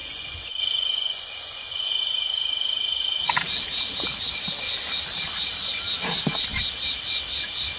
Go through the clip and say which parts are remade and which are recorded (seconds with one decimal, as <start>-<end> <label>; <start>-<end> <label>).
0.0-1.9 remade; 1.9-7.8 recorded